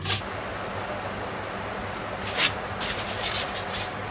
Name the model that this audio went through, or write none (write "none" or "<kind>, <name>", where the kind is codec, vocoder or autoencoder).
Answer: none